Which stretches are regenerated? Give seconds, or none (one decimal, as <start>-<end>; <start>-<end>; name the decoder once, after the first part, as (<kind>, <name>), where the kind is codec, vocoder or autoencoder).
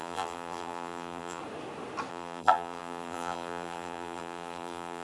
0.0-1.4 (vocoder, BigVGAN v2); 2.1-5.0